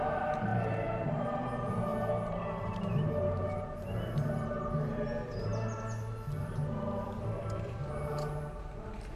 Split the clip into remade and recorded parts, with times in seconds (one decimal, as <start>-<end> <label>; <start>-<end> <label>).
0.0-5.5 remade; 5.5-6.4 recorded; 6.4-9.2 remade